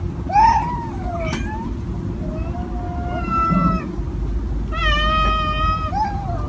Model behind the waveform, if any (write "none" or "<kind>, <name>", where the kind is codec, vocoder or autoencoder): none